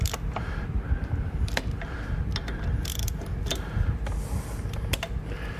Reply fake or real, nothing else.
real